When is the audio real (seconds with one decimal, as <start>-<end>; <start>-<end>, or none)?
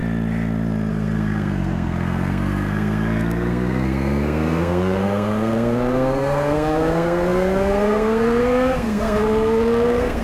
0.0-0.9